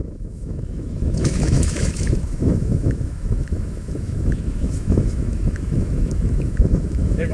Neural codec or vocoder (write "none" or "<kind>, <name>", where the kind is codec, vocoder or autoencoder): autoencoder, DAC-VAE